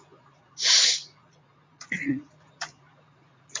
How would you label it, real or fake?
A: fake